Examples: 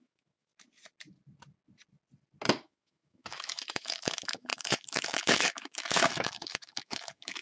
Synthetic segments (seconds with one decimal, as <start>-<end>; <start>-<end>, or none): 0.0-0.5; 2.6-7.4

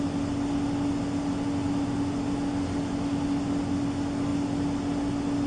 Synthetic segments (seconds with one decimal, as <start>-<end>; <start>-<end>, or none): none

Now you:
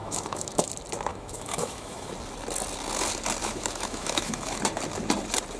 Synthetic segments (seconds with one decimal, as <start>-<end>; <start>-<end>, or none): 0.0-0.7; 1.1-2.1; 3.4-4.6

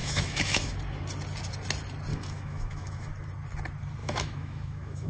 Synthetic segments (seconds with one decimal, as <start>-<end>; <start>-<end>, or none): 0.0-0.7; 2.1-3.1; 4.0-5.1